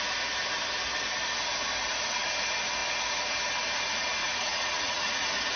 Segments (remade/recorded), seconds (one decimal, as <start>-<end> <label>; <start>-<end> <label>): 0.0-4.2 recorded; 4.2-5.1 remade; 5.1-5.6 recorded